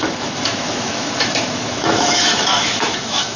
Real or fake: fake